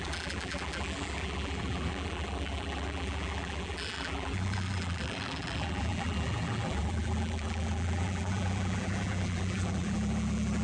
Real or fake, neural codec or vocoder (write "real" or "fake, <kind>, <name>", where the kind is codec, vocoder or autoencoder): fake, vocoder, BigVGAN v2